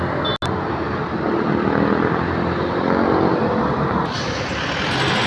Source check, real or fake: real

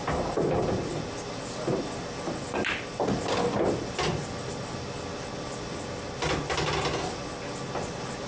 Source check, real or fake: real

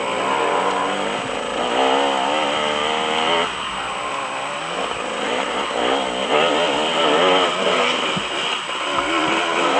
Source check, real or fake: real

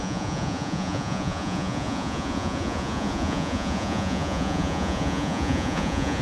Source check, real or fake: fake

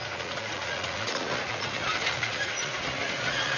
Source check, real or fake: fake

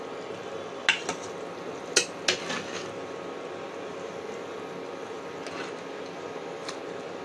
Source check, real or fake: real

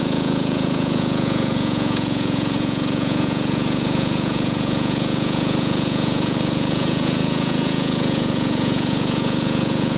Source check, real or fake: fake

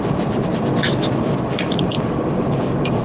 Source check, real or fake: real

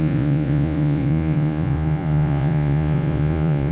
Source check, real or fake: fake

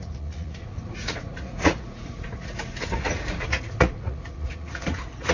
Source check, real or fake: fake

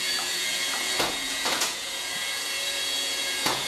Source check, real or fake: fake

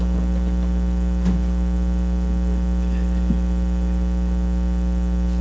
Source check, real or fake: real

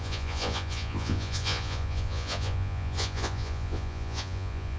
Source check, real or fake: fake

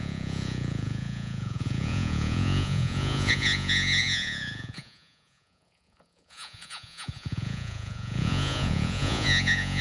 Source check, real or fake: fake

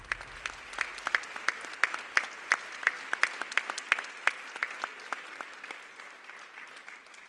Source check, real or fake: real